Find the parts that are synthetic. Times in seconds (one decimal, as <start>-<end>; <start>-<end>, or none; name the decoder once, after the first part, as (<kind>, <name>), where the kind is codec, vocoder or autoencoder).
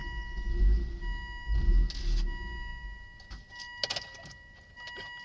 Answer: none